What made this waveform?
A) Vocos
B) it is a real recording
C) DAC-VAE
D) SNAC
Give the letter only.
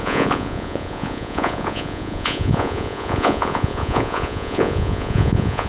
A